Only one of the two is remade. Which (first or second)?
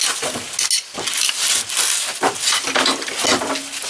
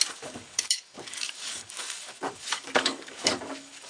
second